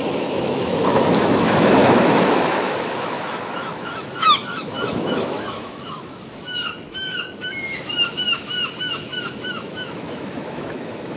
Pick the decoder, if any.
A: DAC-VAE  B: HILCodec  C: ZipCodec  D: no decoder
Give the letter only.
A